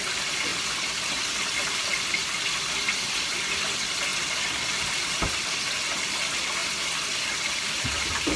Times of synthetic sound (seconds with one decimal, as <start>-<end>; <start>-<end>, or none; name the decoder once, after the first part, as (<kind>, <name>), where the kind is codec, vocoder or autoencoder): 0.5-2.1 (vocoder, BigVGAN v2); 6.6-8.4